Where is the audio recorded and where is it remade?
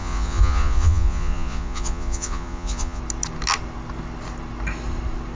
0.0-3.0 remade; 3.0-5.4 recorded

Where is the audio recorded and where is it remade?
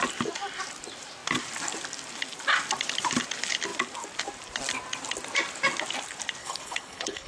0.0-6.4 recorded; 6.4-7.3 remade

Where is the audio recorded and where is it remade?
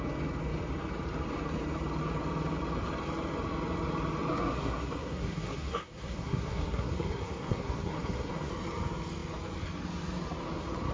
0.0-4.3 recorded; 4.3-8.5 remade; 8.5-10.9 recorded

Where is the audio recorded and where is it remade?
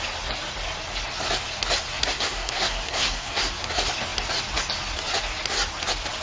0.0-2.0 recorded; 2.0-3.4 remade; 3.4-6.2 recorded